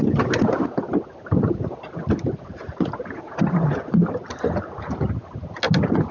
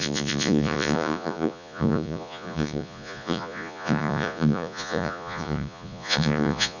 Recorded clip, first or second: first